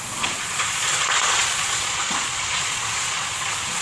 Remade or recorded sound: remade